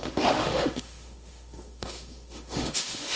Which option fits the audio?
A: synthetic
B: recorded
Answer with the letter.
A